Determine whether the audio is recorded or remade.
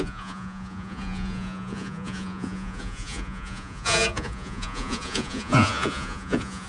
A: remade